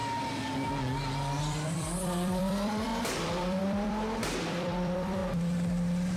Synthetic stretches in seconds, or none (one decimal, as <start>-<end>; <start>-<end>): 1.4-5.2